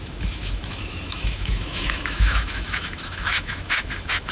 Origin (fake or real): fake